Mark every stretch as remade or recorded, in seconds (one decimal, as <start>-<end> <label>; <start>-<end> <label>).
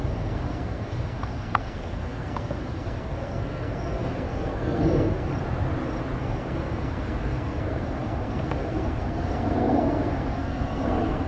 0.0-5.3 remade; 5.3-6.2 recorded; 6.2-11.3 remade